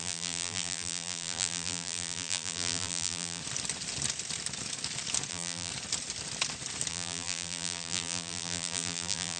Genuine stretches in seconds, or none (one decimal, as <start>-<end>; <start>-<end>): 3.4-5.3; 5.7-6.9